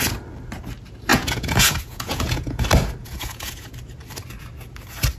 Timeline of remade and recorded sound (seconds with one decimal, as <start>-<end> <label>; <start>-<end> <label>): 0.0-1.1 recorded; 1.1-2.6 remade; 2.6-3.0 recorded; 3.0-3.7 remade; 3.7-5.2 recorded